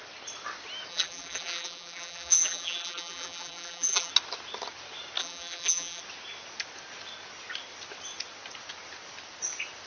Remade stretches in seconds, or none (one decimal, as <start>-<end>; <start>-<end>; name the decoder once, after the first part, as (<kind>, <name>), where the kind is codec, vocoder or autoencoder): 0.9-4.1 (vocoder, BigVGAN v2); 5.2-6.0